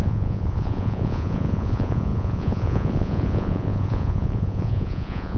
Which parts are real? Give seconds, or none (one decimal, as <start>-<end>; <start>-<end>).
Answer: none